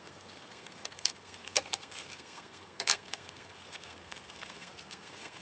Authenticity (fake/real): fake